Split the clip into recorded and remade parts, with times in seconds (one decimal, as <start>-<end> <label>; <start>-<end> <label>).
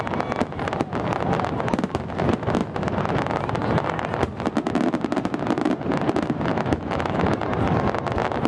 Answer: 0.0-6.5 recorded; 6.5-7.3 remade; 7.3-8.5 recorded